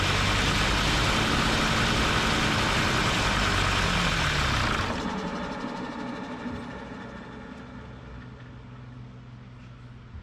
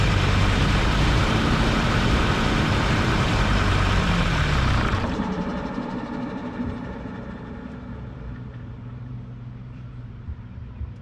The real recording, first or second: first